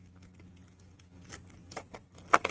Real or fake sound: real